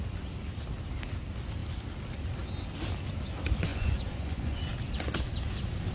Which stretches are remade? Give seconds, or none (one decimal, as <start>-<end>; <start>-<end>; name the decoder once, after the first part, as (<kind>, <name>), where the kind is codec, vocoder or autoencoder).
3.7-4.6 (vocoder, Vocos)